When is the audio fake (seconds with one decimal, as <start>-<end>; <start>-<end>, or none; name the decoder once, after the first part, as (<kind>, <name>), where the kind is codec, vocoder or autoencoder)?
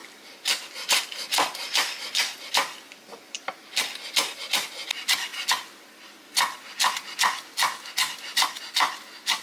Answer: none